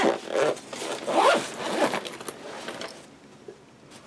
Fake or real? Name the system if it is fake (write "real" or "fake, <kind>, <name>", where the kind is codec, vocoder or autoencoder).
real